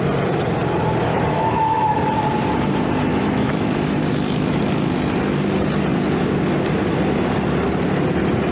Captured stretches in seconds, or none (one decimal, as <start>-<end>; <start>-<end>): 0.0-1.1; 2.0-3.1; 4.6-8.5

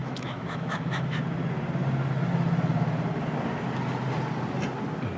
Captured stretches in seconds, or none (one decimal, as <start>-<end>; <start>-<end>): 1.2-5.2

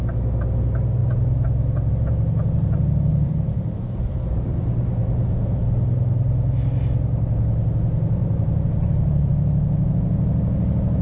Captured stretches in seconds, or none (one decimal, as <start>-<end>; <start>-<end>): 0.0-3.1; 5.6-8.2; 9.3-11.0

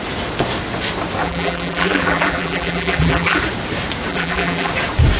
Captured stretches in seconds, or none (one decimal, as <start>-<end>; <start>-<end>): 0.0-1.2; 3.4-4.1; 4.7-5.2

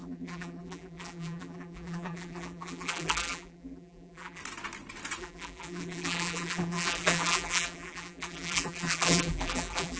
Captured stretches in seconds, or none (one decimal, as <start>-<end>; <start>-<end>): 4.4-5.2

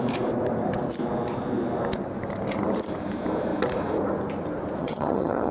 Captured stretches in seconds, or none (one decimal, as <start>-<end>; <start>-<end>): 0.0-4.8